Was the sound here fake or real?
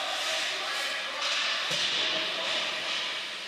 real